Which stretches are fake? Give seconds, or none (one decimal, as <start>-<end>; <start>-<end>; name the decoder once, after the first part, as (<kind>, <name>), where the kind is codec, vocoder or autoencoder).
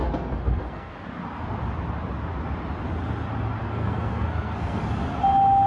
0.0-0.9 (codec, SNAC); 3.6-4.8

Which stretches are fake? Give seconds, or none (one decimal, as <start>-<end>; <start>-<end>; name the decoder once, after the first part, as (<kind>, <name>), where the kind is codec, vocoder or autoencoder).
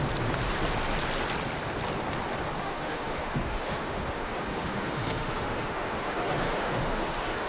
2.6-7.5 (autoencoder, DAC-VAE)